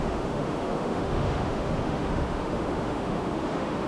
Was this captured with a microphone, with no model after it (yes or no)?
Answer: no